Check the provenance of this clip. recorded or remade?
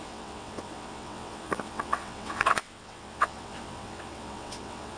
remade